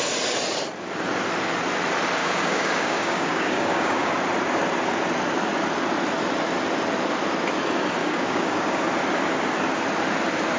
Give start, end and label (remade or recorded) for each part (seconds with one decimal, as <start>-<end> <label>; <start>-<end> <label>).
0.0-2.2 recorded; 2.2-4.1 remade; 4.1-8.0 recorded; 8.0-8.8 remade; 8.8-10.6 recorded

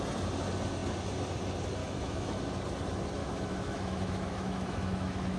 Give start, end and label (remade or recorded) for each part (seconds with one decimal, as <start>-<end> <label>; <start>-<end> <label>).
0.0-1.8 recorded; 1.8-2.4 remade; 2.4-3.2 recorded; 3.2-5.4 remade